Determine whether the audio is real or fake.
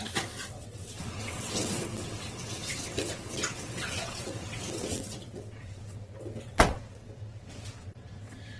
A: fake